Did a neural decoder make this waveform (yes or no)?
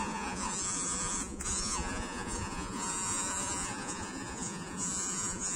yes